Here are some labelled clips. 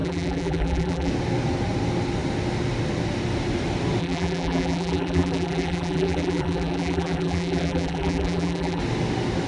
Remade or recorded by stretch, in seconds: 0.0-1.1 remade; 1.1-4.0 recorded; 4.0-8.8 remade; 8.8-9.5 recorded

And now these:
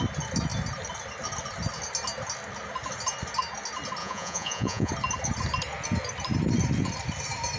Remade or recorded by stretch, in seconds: 0.0-4.0 recorded; 4.0-4.9 remade; 4.9-7.6 recorded